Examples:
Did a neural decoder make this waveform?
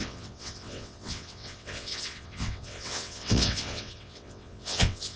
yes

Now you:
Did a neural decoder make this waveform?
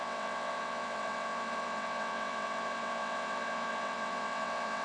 yes